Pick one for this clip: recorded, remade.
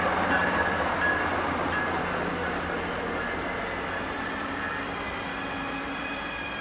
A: recorded